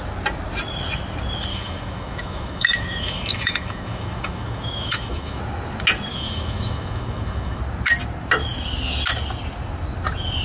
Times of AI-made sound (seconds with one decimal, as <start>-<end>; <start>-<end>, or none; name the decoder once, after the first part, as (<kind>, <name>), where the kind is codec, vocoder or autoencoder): 1.5-5.4 (autoencoder, DAC-VAE); 6.1-7.6